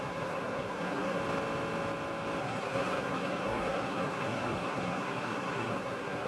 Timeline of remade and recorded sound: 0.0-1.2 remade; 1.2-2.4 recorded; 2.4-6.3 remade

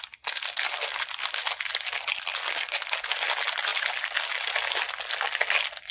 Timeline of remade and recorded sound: 0.0-5.9 recorded

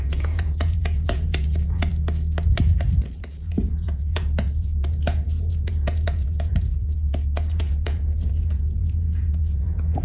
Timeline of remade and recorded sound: 0.0-1.9 remade; 1.9-3.3 recorded; 3.3-10.0 remade

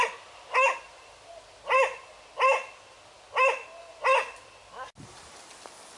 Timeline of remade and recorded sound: 0.0-6.0 recorded

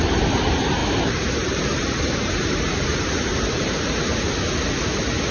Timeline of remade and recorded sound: 0.0-0.8 recorded; 0.8-4.0 remade; 4.0-5.3 recorded

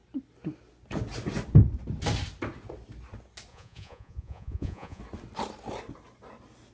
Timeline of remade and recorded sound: 0.0-3.5 recorded; 3.5-5.0 remade; 5.0-6.7 recorded

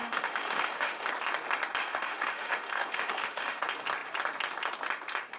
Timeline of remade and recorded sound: 0.0-1.1 remade; 1.1-1.8 recorded; 1.8-3.6 remade; 3.6-5.4 recorded